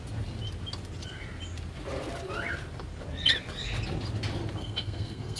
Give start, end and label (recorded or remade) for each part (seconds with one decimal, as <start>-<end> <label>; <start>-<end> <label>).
0.0-4.6 recorded; 4.6-5.4 remade